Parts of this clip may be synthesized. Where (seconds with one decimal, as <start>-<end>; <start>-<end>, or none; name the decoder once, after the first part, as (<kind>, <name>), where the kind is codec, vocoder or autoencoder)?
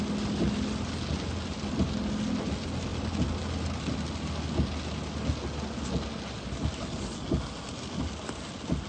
none